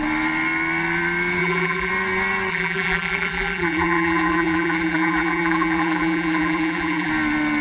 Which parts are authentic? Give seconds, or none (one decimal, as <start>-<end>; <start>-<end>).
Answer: 0.0-1.4; 1.9-2.5; 7.1-7.6